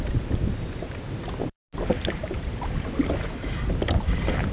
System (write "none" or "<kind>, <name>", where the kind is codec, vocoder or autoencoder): none